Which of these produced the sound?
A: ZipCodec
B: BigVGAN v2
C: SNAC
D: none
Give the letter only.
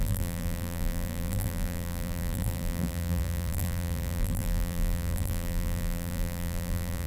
B